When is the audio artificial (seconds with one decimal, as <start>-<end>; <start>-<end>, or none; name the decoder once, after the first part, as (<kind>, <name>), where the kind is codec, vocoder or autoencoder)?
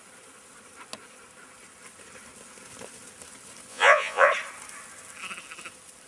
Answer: 3.7-4.3 (vocoder, Vocos)